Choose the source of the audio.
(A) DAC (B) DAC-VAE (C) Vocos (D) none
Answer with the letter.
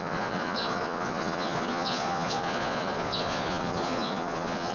C